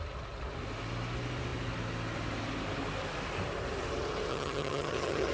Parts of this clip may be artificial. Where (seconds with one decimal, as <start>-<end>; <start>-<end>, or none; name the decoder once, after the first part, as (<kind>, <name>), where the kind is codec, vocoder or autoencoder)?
4.3-5.3 (vocoder, HiFi-GAN)